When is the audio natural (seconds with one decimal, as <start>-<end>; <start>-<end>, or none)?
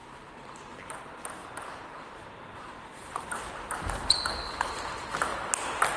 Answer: 0.7-1.4; 4.5-6.0